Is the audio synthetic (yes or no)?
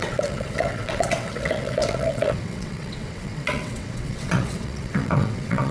yes